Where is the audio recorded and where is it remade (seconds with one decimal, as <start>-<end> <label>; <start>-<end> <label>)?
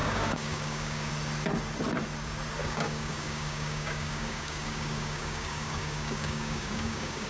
0.0-1.1 remade; 1.1-2.6 recorded; 2.6-7.3 remade